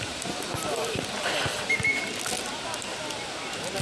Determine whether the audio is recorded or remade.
recorded